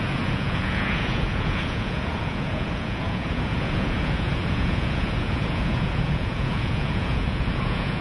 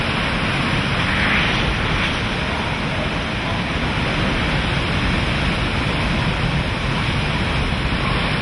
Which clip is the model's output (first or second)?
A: first